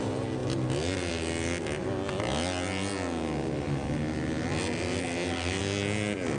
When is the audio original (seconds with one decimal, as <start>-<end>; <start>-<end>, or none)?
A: 0.0-6.4

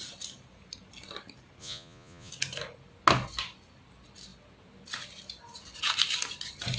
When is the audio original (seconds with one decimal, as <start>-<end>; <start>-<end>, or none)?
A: 0.0-1.6; 2.3-6.8